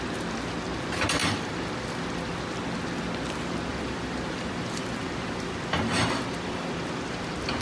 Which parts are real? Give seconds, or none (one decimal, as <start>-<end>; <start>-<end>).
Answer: 0.0-1.2; 2.1-3.7